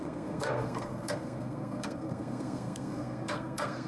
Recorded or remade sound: remade